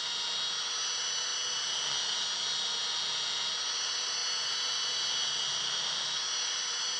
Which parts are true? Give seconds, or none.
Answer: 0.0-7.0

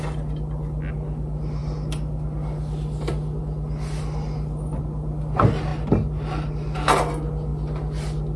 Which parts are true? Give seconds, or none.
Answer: 0.0-8.4

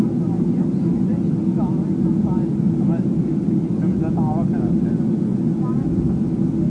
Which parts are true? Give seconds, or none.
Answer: 0.0-6.7

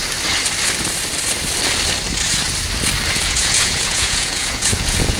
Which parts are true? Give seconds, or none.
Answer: 0.0-3.1

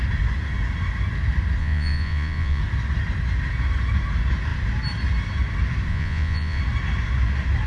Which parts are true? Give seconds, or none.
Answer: 0.0-1.6; 2.6-5.9; 6.6-7.7

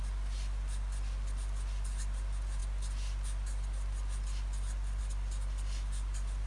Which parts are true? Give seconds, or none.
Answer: 0.0-6.5